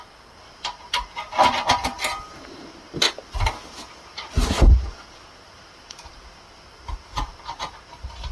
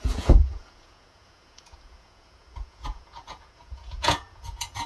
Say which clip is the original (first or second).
first